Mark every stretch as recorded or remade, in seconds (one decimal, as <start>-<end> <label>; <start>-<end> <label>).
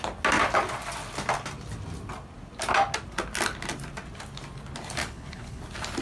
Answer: 0.0-5.0 recorded; 5.0-5.6 remade; 5.6-6.0 recorded